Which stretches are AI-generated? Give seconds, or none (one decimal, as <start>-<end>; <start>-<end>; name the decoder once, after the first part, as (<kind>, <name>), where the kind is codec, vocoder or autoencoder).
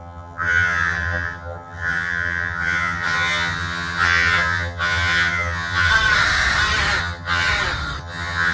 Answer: 0.0-5.9 (vocoder, HiFi-GAN); 7.0-7.5; 8.0-8.5